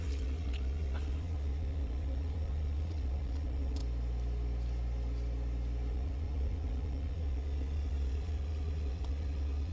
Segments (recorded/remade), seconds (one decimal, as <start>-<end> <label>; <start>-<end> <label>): 0.0-3.8 remade; 3.8-5.9 recorded; 5.9-9.7 remade